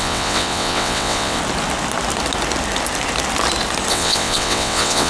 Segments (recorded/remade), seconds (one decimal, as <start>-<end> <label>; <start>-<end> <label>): 0.0-1.4 remade; 1.4-3.9 recorded; 3.9-5.1 remade